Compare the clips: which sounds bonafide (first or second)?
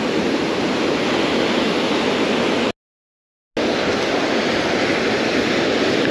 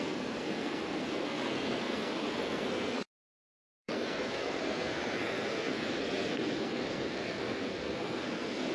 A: first